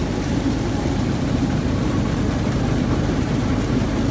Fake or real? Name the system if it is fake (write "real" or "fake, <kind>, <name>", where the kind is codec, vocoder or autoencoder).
fake, vocoder, BigVGAN v2